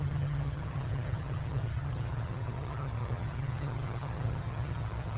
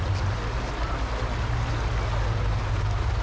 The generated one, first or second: first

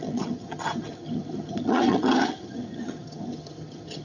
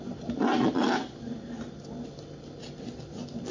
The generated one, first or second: first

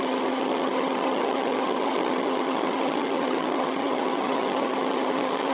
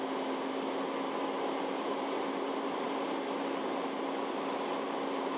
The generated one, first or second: first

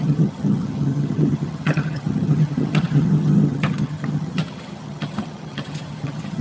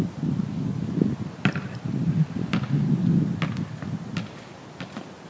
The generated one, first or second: first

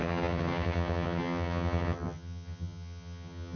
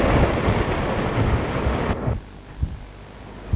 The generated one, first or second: first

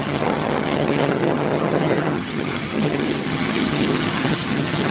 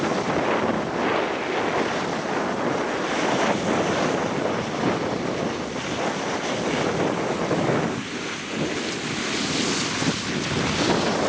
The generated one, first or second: first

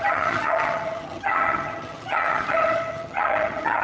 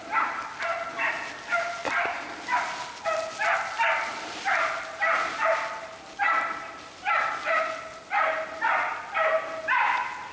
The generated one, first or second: first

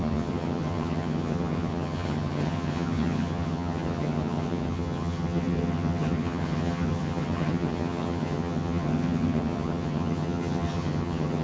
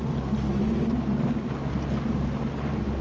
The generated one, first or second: first